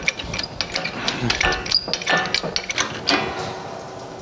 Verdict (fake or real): real